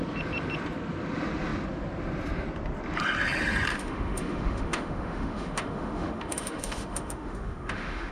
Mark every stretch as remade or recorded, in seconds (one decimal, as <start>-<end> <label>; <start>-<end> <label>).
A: 0.0-3.7 recorded; 3.7-8.1 remade